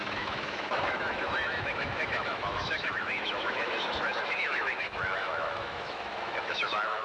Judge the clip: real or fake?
fake